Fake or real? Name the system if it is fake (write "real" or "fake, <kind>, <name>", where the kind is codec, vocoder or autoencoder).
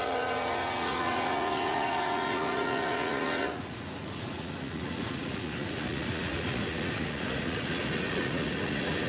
fake, vocoder, Vocos